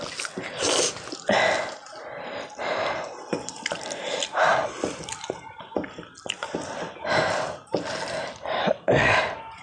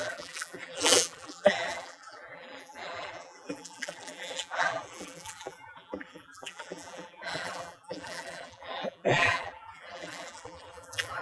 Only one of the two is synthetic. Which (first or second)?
second